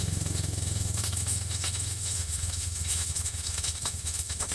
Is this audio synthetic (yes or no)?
yes